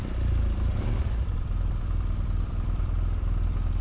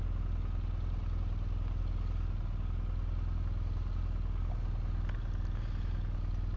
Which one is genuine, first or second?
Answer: second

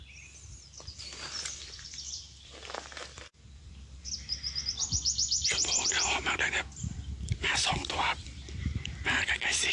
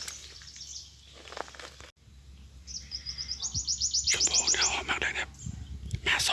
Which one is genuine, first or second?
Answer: second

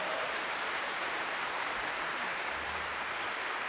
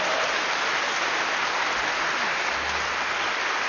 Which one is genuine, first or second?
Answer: second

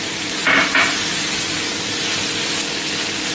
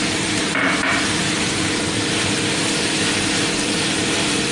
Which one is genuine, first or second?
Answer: first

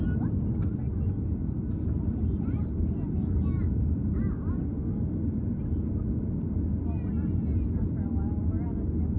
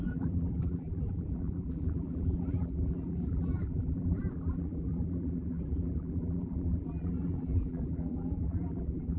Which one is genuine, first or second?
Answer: first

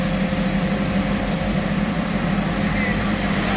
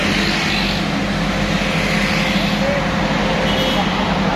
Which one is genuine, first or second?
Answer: second